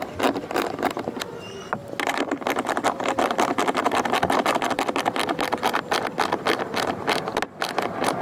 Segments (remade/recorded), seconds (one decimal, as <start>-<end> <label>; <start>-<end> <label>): 0.0-8.2 recorded